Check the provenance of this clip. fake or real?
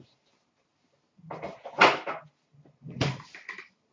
fake